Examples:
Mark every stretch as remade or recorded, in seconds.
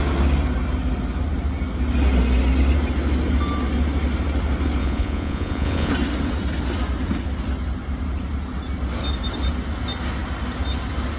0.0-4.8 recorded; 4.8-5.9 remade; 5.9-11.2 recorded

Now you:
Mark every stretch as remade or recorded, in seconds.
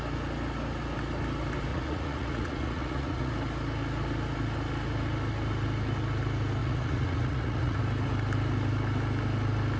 0.0-1.7 recorded; 1.7-3.3 remade; 3.3-6.6 recorded; 6.6-7.8 remade; 7.8-9.8 recorded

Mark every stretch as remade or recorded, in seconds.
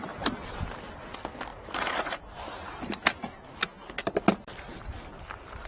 0.0-1.5 recorded; 1.5-2.2 remade; 2.2-5.7 recorded